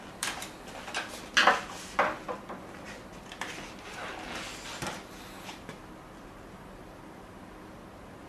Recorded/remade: recorded